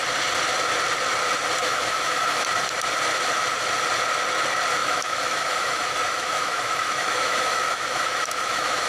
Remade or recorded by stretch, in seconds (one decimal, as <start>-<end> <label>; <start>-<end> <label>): 0.0-1.6 recorded; 1.6-2.4 remade; 2.4-4.8 recorded; 4.8-8.9 remade